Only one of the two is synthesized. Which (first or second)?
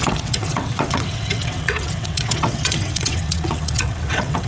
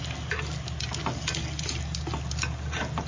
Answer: first